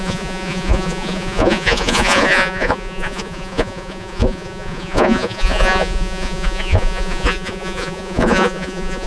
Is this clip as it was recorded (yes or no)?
no